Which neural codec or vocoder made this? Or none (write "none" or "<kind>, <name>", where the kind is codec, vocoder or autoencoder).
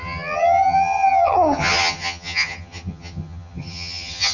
vocoder, HiFi-GAN